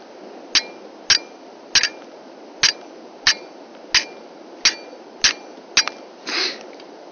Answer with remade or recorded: recorded